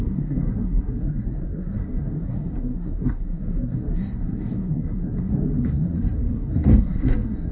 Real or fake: fake